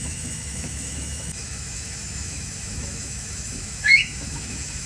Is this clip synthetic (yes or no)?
yes